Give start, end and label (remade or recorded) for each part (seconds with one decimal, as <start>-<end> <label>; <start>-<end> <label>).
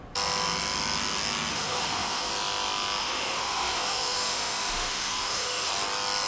0.0-1.5 recorded; 1.5-2.3 remade; 2.3-3.0 recorded; 3.0-5.7 remade; 5.7-6.3 recorded